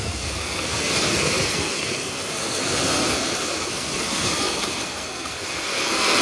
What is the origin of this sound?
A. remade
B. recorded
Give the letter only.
A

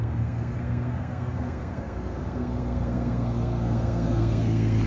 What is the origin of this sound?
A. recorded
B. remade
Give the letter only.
B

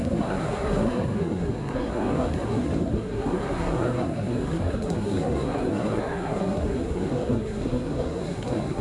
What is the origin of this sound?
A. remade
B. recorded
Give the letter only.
A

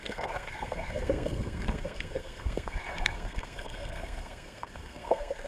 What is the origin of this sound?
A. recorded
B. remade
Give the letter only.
B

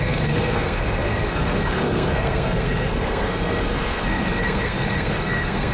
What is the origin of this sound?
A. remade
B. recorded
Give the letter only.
A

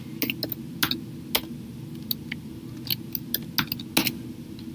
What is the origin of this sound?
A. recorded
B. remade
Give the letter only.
A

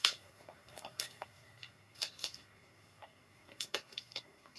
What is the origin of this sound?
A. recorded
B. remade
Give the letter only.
B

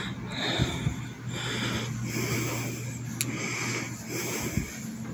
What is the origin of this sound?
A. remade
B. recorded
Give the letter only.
B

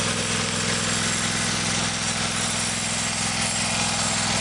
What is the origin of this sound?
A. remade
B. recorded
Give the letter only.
B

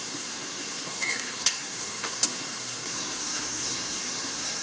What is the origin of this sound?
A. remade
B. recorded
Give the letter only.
A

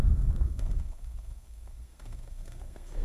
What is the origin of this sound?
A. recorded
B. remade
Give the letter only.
B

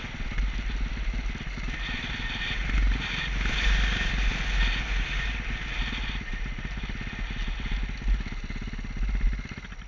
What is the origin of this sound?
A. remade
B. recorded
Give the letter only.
B